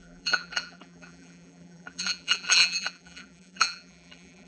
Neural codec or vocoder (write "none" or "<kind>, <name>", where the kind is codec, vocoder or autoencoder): vocoder, BigVGAN v2